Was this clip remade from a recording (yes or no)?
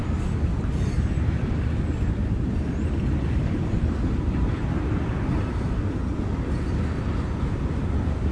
no